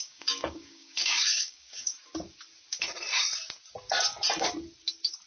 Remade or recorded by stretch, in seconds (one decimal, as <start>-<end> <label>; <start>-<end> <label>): 0.0-1.9 remade; 1.9-5.3 recorded